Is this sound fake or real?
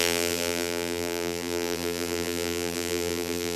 fake